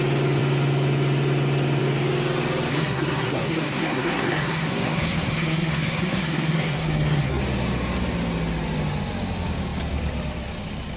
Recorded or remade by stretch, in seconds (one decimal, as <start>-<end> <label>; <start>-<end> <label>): 0.0-2.7 recorded; 2.7-7.4 remade; 7.4-11.0 recorded